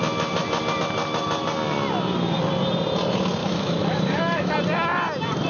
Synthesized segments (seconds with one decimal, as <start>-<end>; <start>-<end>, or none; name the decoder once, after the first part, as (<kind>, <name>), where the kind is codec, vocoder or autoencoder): 3.4-4.5 (autoencoder, DAC-VAE)